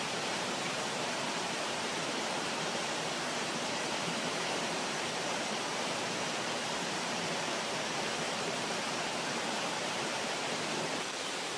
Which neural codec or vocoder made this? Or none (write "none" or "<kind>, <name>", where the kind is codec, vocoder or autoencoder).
vocoder, BigVGAN v2